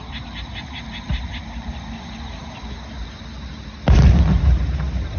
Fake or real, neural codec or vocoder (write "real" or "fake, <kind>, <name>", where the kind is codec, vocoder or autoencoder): real